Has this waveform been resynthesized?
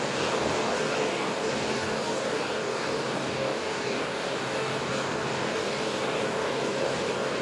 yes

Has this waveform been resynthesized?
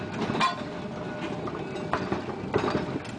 no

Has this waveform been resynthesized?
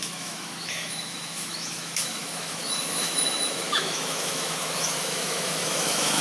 yes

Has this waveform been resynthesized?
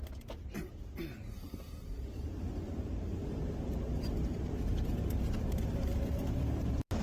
yes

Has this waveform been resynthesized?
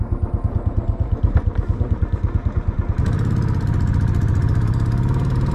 yes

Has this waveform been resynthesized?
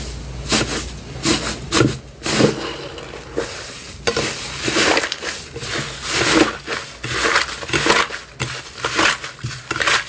no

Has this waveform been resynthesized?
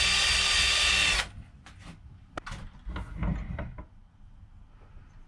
no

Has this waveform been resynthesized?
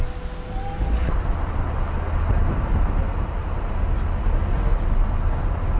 no